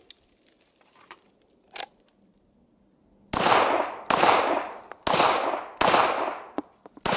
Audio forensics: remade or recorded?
recorded